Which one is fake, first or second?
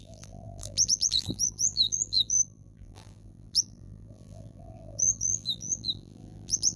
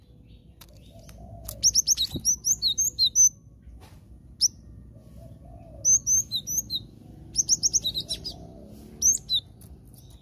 first